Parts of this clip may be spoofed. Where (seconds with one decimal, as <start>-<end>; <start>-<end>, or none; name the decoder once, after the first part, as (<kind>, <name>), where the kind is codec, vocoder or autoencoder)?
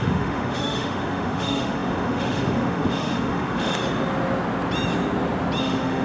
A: 0.0-3.8 (autoencoder, DAC-VAE); 5.6-6.0